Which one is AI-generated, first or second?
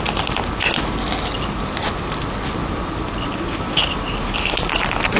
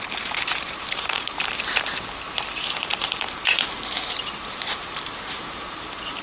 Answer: second